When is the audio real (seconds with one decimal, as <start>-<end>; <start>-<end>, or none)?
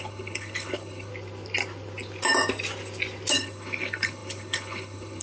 1.1-3.3